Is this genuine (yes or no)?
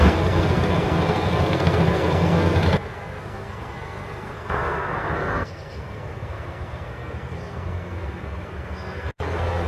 no